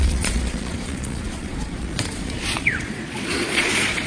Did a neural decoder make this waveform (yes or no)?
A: yes